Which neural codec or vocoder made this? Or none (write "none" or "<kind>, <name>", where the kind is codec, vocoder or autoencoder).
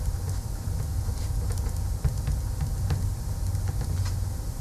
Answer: none